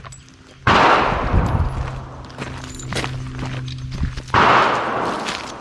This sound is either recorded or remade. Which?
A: recorded